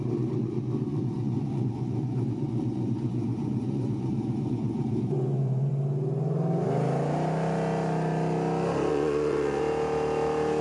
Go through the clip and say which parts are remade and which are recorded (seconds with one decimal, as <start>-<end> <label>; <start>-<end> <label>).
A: 0.0-0.9 recorded; 0.9-5.7 remade; 5.7-8.9 recorded; 8.9-9.6 remade; 9.6-10.6 recorded